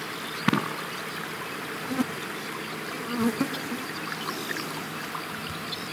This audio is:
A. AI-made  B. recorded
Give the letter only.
B